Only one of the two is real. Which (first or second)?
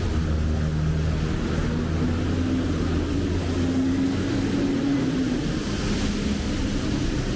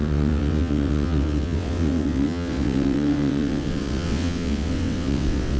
first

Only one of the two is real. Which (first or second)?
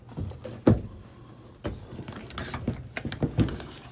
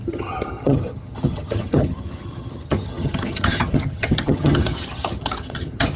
first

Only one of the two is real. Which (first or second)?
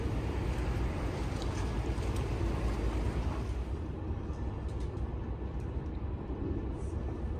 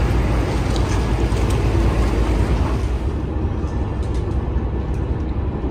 second